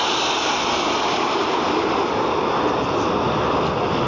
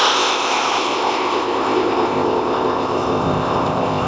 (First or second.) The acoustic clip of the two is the first